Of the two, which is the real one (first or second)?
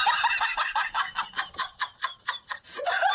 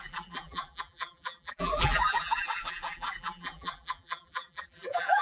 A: first